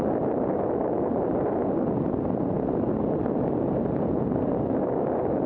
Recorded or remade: recorded